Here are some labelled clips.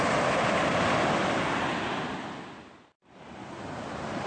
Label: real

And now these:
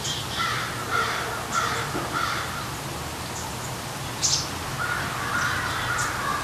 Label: real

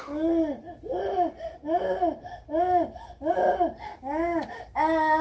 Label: real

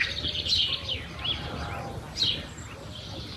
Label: real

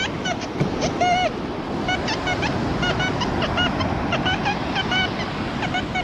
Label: real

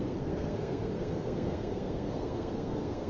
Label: fake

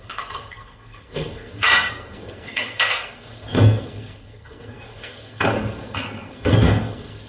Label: fake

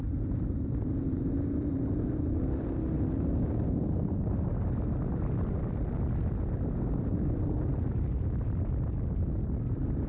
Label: real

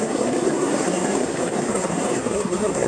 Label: fake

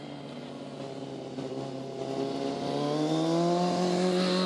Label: real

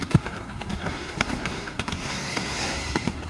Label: fake